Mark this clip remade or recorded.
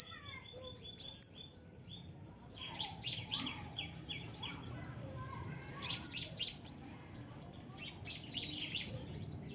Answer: remade